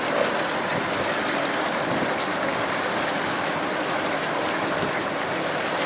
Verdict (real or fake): real